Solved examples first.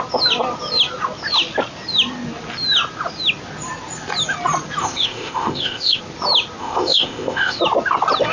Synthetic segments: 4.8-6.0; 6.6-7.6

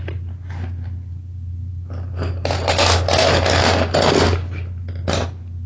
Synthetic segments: none